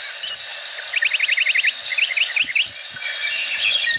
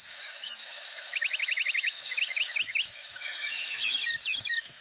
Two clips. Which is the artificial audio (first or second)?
second